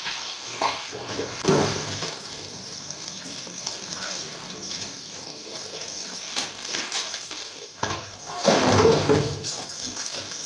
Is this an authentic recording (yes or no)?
no